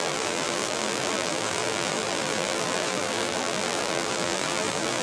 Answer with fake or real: fake